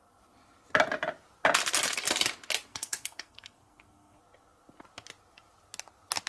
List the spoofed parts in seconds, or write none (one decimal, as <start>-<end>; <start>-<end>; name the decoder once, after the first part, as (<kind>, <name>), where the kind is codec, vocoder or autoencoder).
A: 2.7-4.2 (codec, SNAC)